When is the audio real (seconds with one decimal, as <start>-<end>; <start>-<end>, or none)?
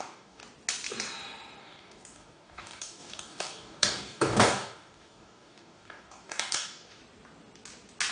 0.4-1.6; 7.0-8.1